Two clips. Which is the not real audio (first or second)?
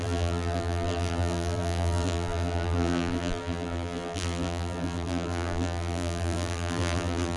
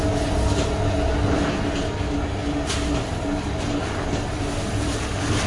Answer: first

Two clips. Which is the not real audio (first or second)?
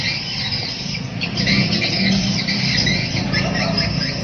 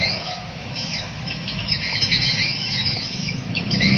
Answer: second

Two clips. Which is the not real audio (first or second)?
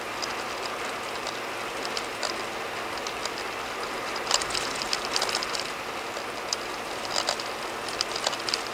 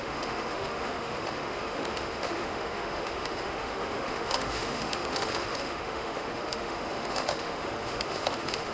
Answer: second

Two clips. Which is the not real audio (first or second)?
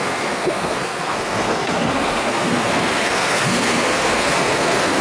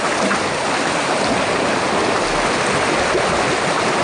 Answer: first